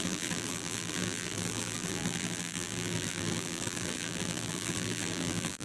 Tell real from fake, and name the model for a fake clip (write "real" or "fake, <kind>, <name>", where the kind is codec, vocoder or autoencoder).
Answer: fake, vocoder, BigVGAN v2